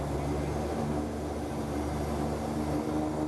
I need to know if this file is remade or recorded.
recorded